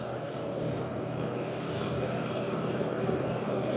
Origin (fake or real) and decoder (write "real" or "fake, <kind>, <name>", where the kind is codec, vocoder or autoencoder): fake, codec, DAC